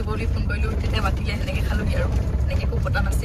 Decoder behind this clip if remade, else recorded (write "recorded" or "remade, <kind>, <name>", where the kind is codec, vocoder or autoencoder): remade, vocoder, BigVGAN v2